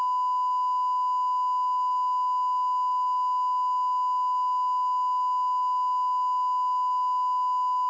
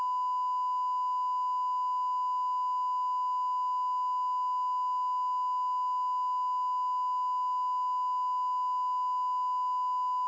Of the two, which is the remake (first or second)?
first